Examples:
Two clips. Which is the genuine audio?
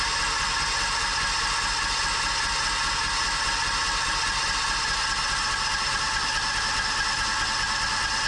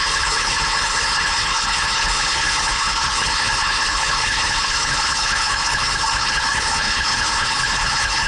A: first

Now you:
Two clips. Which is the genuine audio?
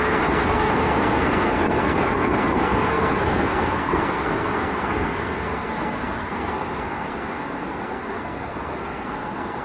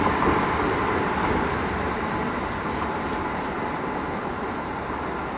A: second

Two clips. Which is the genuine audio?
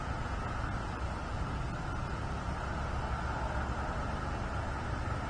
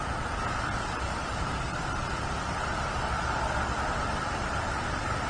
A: first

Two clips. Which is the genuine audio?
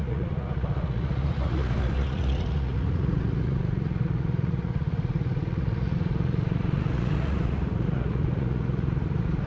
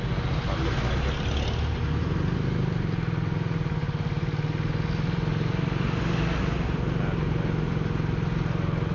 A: second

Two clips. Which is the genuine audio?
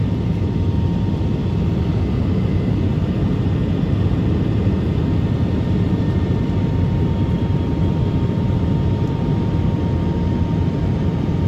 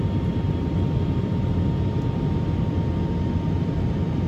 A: second